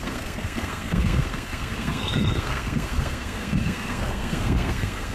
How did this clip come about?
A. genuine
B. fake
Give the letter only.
B